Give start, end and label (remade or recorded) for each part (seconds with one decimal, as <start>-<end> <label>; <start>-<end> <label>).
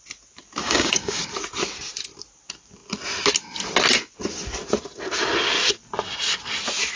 0.0-0.6 recorded; 0.6-1.2 remade; 1.2-7.0 recorded